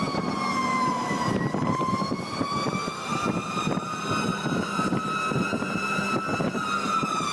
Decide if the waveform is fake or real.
fake